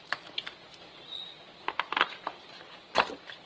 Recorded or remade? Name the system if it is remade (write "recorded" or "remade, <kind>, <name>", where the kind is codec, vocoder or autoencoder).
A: recorded